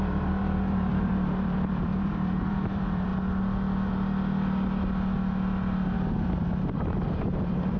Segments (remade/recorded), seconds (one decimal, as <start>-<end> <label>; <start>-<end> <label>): 0.0-3.1 remade; 3.1-6.1 recorded; 6.1-7.8 remade